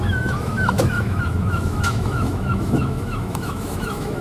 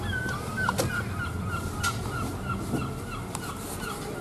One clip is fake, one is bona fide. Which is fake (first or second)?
first